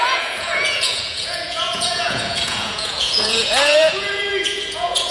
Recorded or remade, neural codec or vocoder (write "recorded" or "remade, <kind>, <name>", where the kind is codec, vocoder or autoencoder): remade, vocoder, Vocos